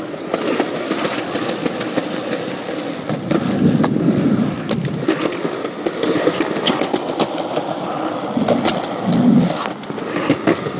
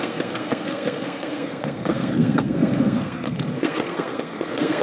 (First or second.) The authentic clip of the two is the first